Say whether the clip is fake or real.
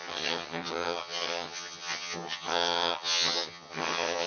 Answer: fake